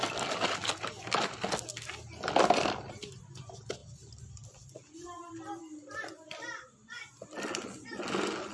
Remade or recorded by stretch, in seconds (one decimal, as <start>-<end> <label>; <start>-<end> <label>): 0.0-8.5 recorded